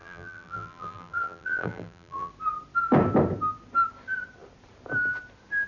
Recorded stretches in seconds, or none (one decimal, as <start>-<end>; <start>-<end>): 2.3-5.7

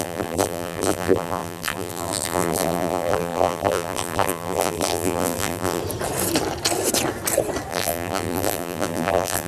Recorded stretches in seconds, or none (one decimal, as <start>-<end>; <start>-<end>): 5.8-7.7